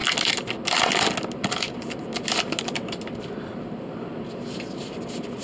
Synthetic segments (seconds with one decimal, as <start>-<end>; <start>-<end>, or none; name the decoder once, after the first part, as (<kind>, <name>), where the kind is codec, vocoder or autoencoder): none